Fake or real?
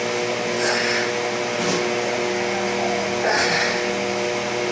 real